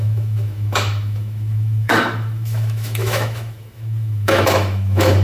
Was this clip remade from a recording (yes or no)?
yes